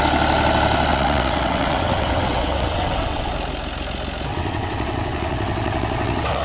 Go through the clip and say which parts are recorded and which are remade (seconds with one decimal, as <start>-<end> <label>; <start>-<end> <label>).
0.0-0.9 recorded; 0.9-3.3 remade; 3.3-4.3 recorded; 4.3-6.4 remade